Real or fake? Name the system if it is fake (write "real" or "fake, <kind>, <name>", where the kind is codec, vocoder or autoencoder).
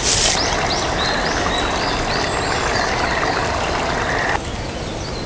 real